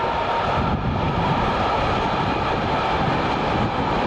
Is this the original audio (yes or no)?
yes